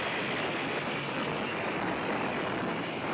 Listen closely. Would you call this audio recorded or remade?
recorded